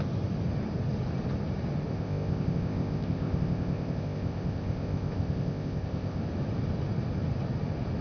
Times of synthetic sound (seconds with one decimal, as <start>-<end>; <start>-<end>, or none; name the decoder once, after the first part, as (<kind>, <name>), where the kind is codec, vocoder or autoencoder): 1.9-6.2 (codec, ZipCodec)